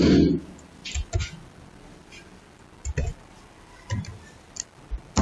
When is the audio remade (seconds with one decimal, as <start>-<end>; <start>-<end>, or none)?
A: none